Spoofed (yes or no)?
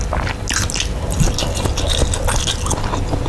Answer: no